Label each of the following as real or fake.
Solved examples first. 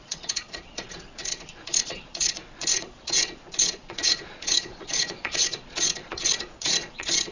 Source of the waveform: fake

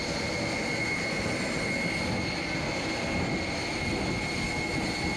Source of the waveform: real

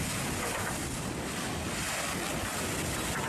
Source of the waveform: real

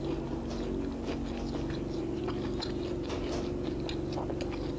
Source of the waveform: real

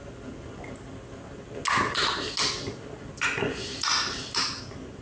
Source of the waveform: real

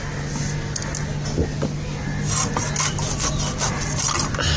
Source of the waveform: real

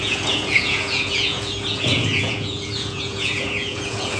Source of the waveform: fake